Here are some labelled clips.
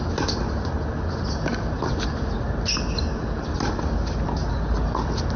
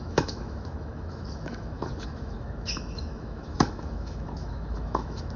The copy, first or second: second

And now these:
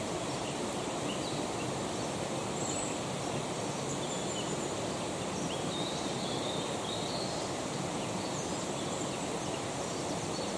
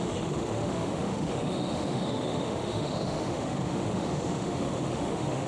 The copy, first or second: second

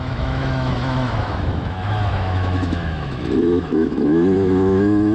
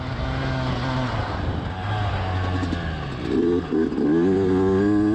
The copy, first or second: first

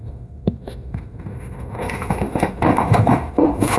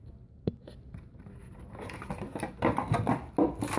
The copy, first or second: first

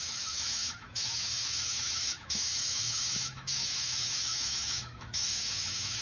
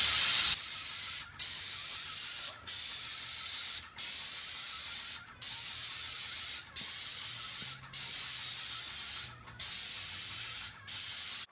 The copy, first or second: first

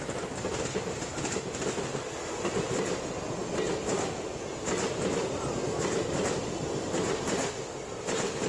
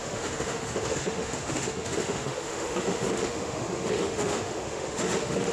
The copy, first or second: second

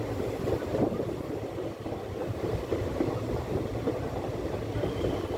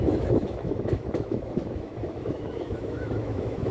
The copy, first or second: second